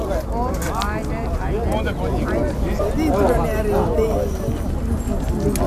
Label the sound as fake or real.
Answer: real